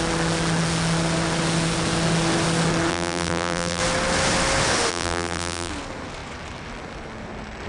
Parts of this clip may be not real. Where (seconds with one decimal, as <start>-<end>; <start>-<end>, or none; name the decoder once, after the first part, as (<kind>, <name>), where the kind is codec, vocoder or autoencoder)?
2.9-3.8 (vocoder, BigVGAN v2); 4.9-5.7